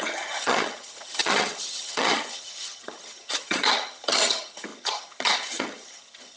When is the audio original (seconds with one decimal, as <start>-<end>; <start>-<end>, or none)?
none